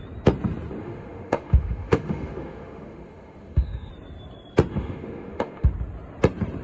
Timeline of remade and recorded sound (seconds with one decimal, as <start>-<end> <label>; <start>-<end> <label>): 0.0-0.8 recorded; 0.8-3.9 remade; 3.9-4.7 recorded; 4.7-5.7 remade; 5.7-6.6 recorded